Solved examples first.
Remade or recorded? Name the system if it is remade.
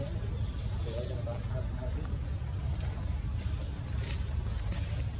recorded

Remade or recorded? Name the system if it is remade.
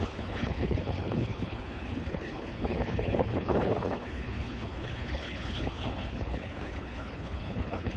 remade, codec, HILCodec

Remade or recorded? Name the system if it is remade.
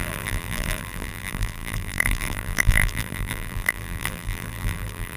remade, vocoder, BigVGAN v2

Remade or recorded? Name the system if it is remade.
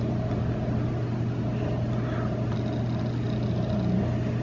recorded